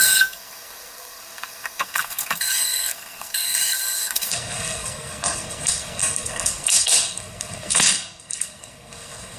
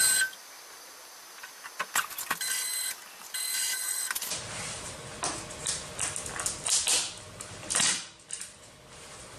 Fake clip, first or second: first